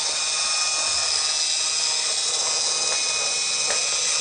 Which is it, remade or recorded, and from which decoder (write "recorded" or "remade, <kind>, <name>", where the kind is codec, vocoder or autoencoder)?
recorded